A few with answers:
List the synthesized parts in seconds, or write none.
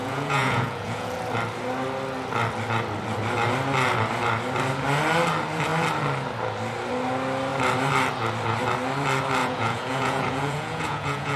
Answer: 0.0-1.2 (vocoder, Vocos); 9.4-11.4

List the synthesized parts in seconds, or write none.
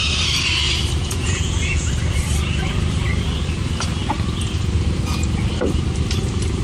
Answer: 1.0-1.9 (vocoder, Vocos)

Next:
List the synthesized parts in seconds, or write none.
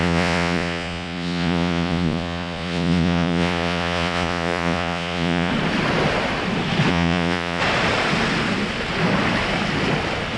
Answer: 0.0-5.5 (vocoder, Vocos); 6.9-7.6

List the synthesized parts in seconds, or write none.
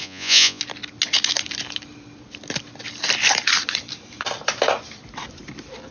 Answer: 0.0-0.6 (vocoder, Vocos)